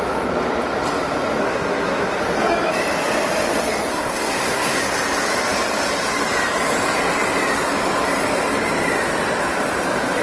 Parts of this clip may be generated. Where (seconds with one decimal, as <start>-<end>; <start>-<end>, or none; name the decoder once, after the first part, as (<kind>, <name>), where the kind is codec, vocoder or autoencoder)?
1.4-2.2 (codec, SNAC); 3.9-4.8